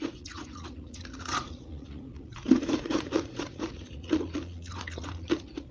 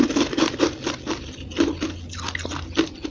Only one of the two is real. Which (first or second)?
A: second